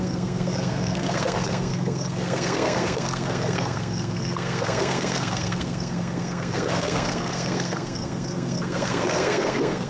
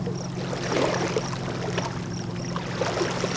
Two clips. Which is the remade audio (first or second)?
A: first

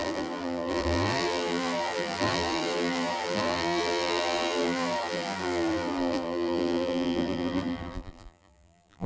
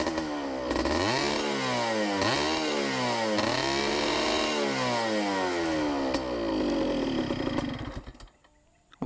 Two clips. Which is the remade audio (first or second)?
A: first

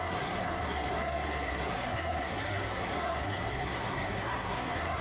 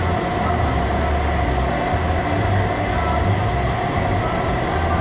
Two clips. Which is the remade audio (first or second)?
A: first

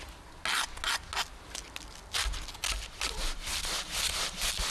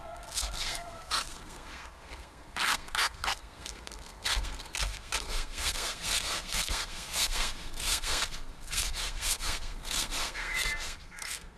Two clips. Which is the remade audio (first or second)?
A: second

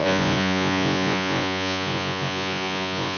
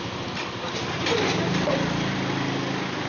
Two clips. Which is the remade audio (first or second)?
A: first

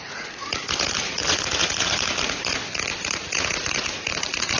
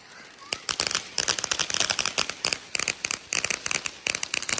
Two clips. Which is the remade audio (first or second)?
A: first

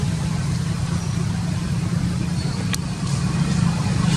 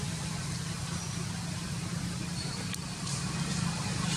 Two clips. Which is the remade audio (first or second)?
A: first